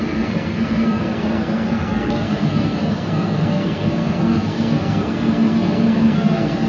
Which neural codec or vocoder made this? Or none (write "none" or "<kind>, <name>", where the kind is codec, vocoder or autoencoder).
codec, SNAC